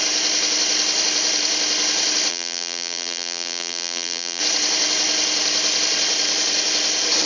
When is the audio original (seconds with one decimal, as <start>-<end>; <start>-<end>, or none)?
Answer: 0.0-2.3; 4.4-7.2